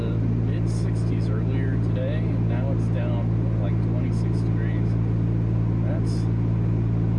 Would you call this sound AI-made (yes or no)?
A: no